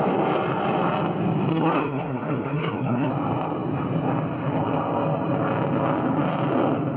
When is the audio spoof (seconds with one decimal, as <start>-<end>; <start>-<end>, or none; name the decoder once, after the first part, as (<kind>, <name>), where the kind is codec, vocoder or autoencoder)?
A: 1.5-3.1 (codec, SNAC)